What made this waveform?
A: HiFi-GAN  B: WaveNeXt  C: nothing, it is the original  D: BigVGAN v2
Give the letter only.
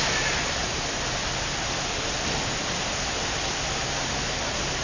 C